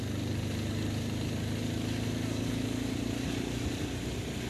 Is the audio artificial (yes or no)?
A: no